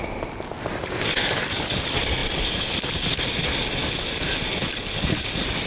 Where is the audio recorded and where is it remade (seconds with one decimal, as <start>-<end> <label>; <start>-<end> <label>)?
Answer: 0.0-5.7 recorded